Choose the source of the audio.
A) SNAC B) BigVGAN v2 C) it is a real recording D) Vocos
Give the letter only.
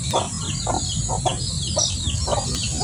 C